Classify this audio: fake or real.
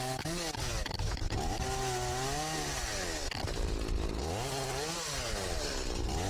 real